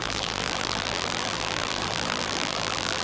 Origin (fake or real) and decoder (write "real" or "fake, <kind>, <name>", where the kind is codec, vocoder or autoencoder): fake, vocoder, BigVGAN v2